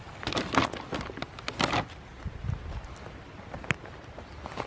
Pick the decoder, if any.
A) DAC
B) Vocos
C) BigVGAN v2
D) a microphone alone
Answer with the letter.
D